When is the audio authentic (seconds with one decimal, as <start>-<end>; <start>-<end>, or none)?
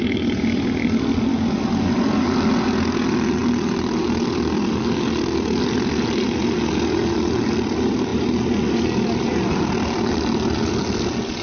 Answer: 0.0-11.4